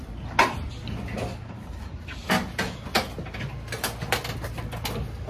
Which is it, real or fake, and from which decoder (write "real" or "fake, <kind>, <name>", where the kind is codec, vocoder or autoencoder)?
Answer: real